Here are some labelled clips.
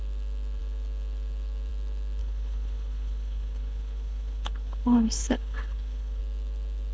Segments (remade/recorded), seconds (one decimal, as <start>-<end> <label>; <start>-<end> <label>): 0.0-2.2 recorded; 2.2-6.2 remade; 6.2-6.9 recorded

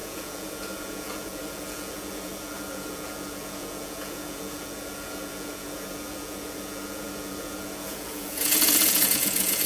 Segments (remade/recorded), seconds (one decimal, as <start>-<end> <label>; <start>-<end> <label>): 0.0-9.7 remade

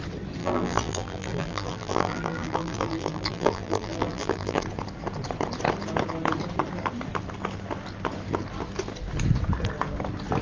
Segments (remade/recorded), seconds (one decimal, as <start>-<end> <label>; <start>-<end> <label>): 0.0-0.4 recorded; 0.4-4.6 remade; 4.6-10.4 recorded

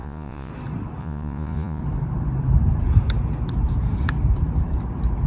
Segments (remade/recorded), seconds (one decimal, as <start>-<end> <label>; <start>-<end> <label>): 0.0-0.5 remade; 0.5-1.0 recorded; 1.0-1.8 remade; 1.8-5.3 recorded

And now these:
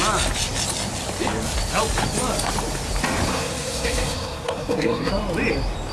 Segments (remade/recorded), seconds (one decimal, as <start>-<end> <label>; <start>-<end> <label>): 0.0-3.3 recorded; 3.3-5.1 remade; 5.1-5.9 recorded

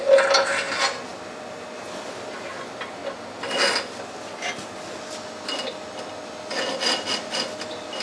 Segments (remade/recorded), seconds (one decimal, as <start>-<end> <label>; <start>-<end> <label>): 0.0-8.0 recorded

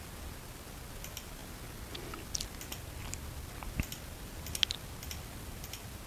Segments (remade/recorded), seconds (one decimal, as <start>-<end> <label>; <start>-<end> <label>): 0.0-6.1 recorded